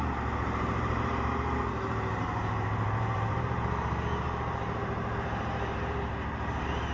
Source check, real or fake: fake